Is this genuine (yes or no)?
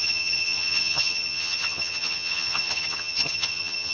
no